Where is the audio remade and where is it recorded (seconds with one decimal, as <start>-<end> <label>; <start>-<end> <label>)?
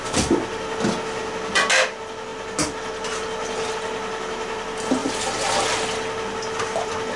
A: 0.0-7.2 recorded